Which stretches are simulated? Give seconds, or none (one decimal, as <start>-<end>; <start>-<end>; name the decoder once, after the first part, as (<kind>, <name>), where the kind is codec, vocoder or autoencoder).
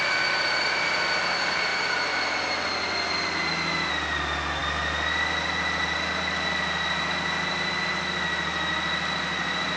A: none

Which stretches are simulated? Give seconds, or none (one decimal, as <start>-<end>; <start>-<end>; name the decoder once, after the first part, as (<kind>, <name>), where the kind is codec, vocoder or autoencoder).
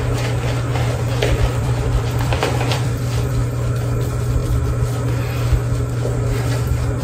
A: 0.7-3.3 (vocoder, BigVGAN v2)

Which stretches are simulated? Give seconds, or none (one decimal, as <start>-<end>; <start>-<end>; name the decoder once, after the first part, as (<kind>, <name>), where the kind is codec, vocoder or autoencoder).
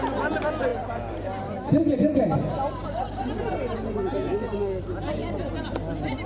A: 0.7-1.7 (vocoder, BigVGAN v2); 5.2-6.3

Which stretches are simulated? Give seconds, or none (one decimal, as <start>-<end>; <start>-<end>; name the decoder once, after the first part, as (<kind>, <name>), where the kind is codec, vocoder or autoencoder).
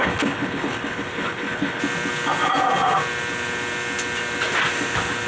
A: 0.0-1.8 (codec, HILCodec)